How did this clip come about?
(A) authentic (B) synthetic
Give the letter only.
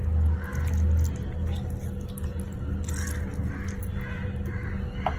A